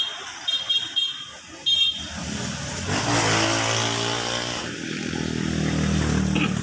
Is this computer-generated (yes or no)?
no